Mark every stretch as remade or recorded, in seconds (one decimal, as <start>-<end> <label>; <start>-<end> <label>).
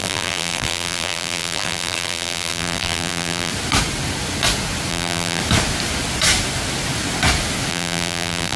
0.0-3.5 remade; 3.5-4.9 recorded; 4.9-5.4 remade; 5.4-7.7 recorded; 7.7-8.6 remade